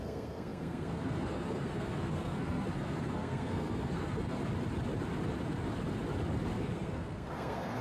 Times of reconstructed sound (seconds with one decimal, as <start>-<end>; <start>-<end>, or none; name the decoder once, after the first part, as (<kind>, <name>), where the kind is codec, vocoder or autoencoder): 0.0-4.4 (codec, SNAC); 6.5-7.8